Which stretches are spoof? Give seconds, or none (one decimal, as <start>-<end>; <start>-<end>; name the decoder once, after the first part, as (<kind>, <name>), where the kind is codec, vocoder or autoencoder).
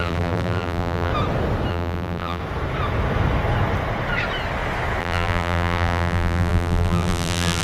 0.0-1.1 (vocoder, BigVGAN v2); 1.7-2.4; 5.0-7.6